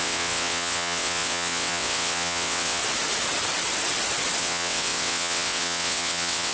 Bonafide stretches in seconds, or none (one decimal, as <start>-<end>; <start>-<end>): 2.8-4.4